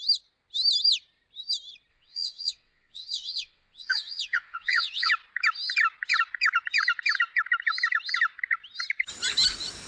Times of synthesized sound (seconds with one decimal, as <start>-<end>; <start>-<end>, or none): 1.9-5.1